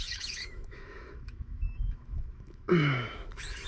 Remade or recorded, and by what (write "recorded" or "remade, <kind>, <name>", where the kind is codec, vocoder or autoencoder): remade, autoencoder, DAC-VAE